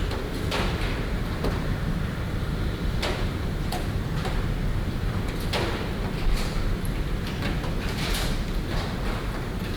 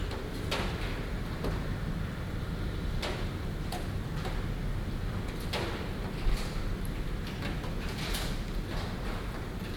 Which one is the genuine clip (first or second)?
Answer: second